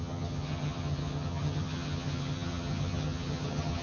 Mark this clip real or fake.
fake